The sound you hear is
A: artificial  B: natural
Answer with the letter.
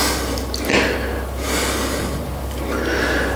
B